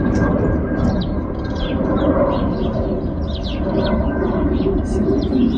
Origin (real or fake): fake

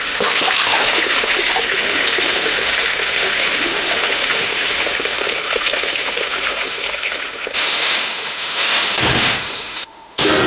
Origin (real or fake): fake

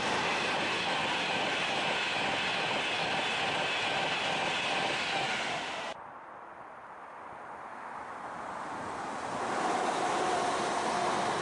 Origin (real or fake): real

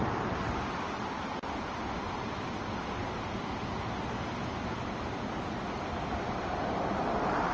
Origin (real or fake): real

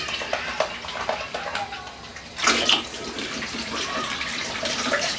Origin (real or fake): real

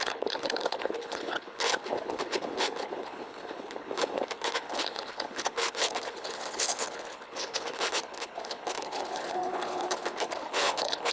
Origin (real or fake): fake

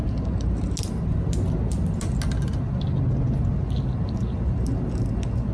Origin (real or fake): real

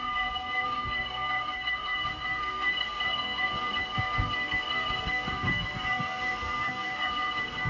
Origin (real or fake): fake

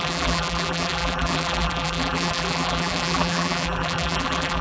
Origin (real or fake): fake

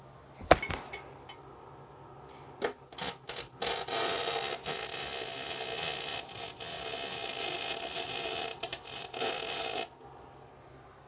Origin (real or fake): real